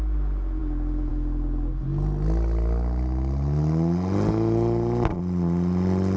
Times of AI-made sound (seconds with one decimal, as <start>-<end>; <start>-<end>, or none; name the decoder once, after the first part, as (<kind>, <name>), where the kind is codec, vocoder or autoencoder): none